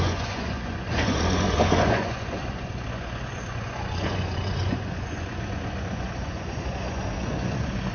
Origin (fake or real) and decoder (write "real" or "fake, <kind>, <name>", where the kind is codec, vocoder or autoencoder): fake, vocoder, Vocos